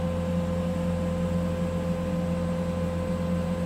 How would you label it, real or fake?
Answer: real